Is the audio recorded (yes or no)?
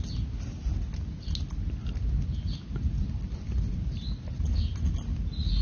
yes